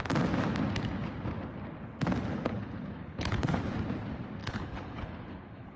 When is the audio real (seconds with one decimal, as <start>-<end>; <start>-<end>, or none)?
0.0-2.3; 3.6-4.4